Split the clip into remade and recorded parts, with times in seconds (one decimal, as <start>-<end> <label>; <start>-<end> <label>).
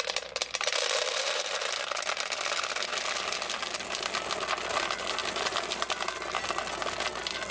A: 0.0-7.5 recorded